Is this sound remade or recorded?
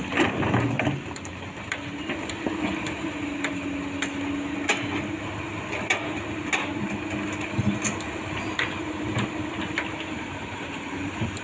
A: recorded